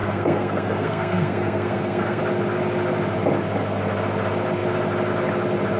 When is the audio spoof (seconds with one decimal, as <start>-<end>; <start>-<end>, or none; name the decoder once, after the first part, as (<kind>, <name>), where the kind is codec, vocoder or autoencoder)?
0.0-2.2 (codec, SNAC)